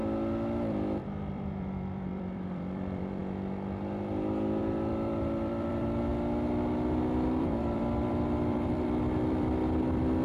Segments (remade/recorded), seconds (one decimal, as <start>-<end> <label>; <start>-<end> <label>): 0.0-1.3 recorded; 1.3-3.2 remade; 3.2-4.6 recorded; 4.6-6.1 remade; 6.1-7.4 recorded; 7.4-10.2 remade